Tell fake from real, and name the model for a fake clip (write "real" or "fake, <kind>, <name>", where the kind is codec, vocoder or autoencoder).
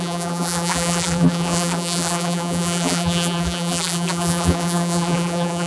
fake, vocoder, BigVGAN v2